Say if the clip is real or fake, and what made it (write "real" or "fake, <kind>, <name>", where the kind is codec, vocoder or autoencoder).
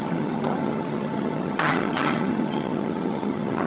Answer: fake, vocoder, HiFi-GAN